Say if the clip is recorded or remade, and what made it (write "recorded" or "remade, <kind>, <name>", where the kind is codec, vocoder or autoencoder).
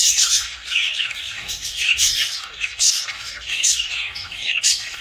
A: remade, codec, DAC